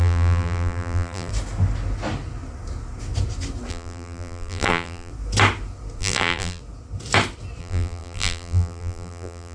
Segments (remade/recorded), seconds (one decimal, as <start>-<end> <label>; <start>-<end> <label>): 0.0-1.3 remade; 1.3-3.7 recorded; 3.7-5.1 remade; 5.1-6.0 recorded; 6.0-6.6 remade; 6.6-7.6 recorded; 7.6-9.5 remade